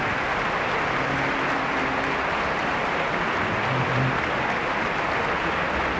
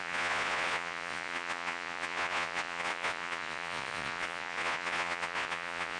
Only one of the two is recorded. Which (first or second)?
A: first